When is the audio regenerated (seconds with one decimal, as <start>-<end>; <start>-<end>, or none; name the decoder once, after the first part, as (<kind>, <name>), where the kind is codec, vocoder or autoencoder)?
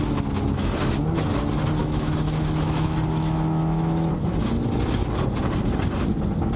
1.8-4.1 (autoencoder, DAC-VAE)